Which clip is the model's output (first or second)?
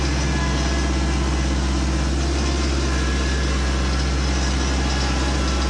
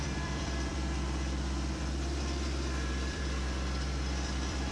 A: second